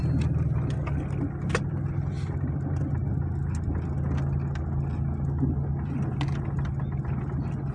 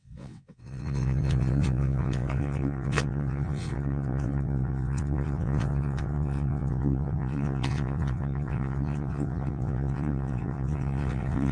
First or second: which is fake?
second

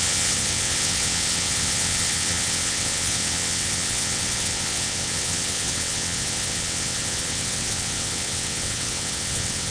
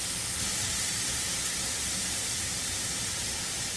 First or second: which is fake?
first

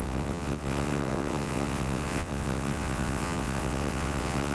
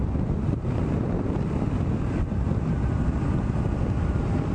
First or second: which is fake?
first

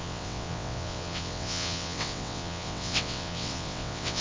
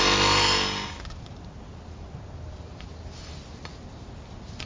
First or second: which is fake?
first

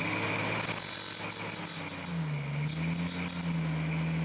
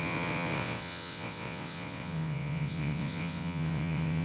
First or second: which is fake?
second